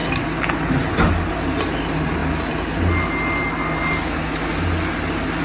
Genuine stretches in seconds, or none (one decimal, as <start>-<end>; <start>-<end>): 0.0-5.4